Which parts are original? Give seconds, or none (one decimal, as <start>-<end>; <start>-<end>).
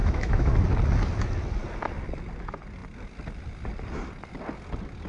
0.5-5.1